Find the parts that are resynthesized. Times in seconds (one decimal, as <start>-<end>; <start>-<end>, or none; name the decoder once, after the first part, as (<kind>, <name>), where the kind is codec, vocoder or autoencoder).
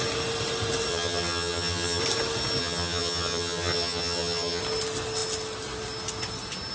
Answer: 0.9-2.0 (vocoder, HiFi-GAN); 2.6-4.6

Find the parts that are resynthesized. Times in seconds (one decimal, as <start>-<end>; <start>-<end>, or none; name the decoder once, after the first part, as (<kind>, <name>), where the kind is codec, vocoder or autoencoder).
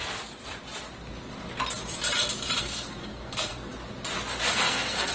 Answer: 2.6-3.7 (codec, SNAC); 4.5-5.1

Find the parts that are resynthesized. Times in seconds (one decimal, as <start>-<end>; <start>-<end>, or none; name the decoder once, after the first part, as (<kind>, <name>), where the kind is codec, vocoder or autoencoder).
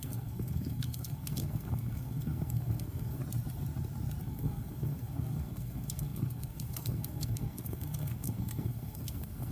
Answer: 0.0-3.2 (codec, SNAC); 4.2-9.5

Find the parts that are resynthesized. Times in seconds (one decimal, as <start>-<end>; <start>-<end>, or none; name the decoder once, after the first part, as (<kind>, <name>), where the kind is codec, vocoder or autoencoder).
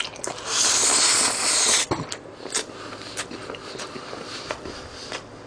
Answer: none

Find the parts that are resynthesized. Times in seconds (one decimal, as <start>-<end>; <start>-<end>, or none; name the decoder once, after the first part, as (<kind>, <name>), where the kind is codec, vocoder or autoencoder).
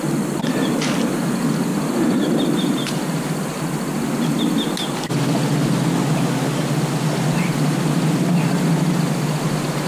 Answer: 1.7-3.6 (vocoder, BigVGAN v2)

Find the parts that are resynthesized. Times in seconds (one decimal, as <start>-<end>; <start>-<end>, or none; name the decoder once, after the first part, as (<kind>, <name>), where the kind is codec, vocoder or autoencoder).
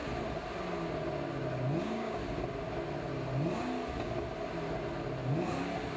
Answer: 1.8-2.2 (codec, DAC)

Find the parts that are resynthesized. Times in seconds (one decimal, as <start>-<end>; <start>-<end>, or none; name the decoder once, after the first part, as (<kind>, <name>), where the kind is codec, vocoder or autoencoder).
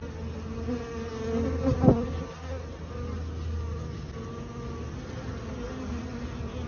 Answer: none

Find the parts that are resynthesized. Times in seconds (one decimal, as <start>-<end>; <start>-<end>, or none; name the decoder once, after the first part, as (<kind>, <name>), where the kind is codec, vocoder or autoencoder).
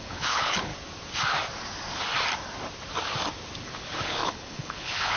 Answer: 0.0-0.7 (codec, HILCodec); 3.6-5.2